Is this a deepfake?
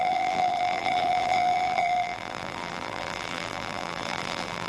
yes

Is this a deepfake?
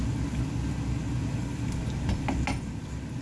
no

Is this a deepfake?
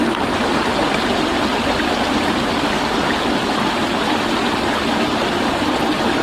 no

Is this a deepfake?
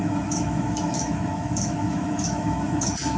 yes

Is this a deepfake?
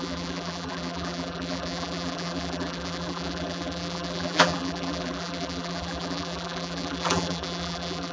yes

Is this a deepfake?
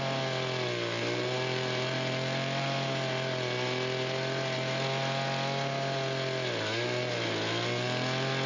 no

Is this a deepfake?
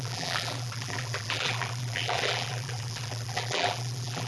yes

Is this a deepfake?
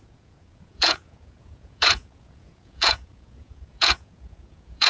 yes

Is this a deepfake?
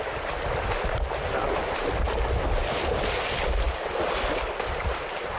no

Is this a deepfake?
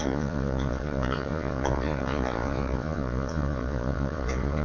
yes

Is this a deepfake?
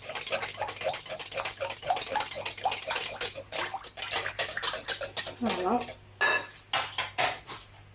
no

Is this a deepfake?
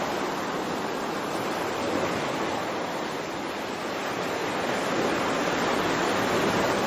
no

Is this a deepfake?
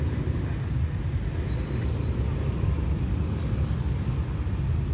no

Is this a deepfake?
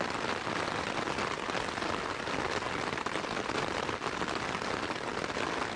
no